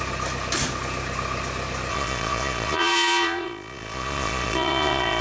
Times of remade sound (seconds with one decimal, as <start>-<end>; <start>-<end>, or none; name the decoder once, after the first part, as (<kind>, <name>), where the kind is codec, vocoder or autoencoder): 1.9-5.2 (vocoder, Vocos)

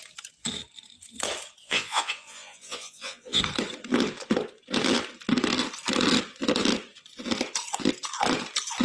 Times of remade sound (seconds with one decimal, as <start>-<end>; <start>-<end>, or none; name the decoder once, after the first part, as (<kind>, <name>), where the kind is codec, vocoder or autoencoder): 1.6-3.4 (vocoder, Vocos)

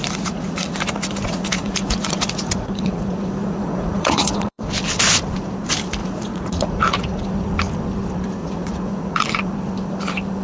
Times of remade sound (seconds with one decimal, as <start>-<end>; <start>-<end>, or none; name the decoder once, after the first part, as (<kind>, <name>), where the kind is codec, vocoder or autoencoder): 0.0-4.7 (vocoder, Vocos); 6.0-7.3; 8.4-9.5

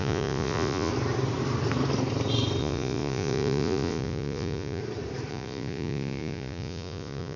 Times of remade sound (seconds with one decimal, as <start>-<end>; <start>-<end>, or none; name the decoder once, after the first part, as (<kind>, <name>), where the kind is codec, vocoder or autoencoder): 0.0-0.9 (vocoder, Vocos); 2.6-4.8; 5.3-7.4

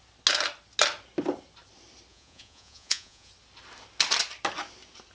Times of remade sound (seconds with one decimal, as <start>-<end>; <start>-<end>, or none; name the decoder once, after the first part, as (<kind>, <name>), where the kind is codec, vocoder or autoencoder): 2.1-3.3 (vocoder, Vocos)

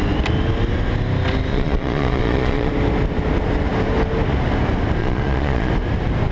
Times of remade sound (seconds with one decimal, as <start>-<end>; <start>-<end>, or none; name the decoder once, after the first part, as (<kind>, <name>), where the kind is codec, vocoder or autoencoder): 1.5-2.7 (vocoder, Vocos); 5.0-5.7

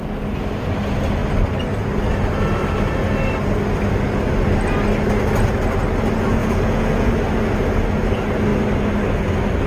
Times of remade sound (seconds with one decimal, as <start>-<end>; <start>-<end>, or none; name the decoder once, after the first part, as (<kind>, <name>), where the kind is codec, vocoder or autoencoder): 6.4-7.1 (vocoder, Vocos)